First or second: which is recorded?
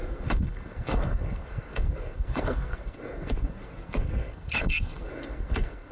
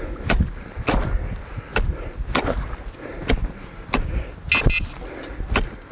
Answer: second